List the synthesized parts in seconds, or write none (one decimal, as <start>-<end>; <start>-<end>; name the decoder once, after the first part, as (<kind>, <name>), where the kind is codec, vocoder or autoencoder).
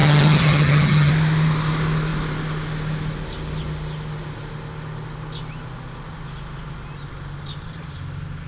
0.0-1.1 (vocoder, HiFi-GAN)